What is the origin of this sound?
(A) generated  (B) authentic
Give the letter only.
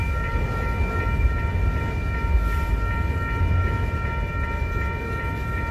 B